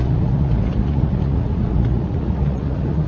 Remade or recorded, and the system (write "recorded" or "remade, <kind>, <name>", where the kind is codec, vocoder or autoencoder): remade, vocoder, Vocos